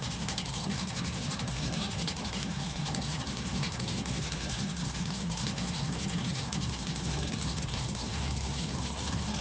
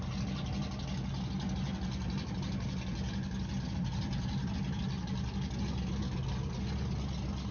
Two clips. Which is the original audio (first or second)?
second